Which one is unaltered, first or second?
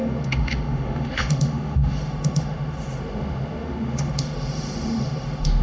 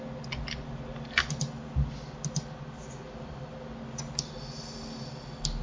second